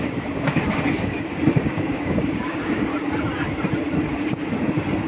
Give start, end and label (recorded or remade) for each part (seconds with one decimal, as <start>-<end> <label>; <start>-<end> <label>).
0.0-2.9 remade; 2.9-4.3 recorded; 4.3-5.1 remade